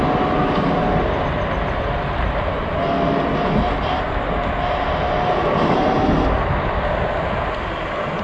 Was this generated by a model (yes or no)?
no